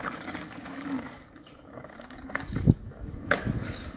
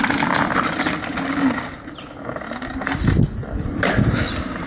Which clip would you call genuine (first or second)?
second